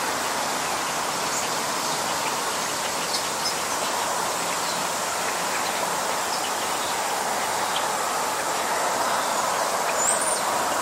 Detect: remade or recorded recorded